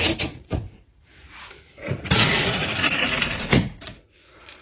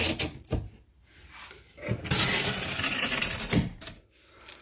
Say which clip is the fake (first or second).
first